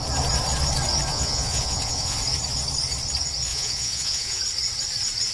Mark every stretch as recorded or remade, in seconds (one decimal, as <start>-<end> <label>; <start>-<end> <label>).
0.0-1.1 recorded; 1.1-2.2 remade; 2.2-3.5 recorded; 3.5-4.4 remade; 4.4-5.3 recorded